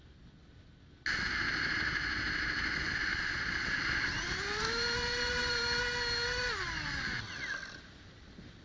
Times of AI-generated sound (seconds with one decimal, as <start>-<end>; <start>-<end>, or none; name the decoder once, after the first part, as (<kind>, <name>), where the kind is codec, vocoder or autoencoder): 3.1-5.8 (vocoder, BigVGAN v2)